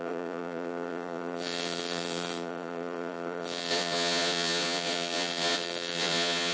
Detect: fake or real fake